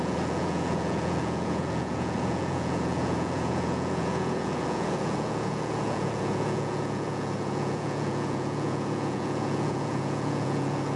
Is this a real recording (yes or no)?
no